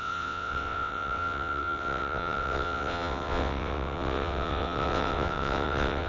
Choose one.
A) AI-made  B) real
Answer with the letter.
A